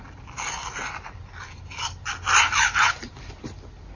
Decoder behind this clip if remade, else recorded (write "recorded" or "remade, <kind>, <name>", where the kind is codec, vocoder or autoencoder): recorded